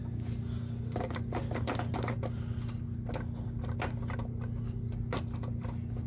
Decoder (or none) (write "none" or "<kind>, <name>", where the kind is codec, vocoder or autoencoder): none